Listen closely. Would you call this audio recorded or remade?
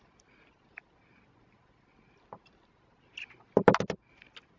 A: recorded